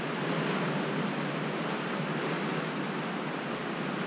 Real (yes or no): yes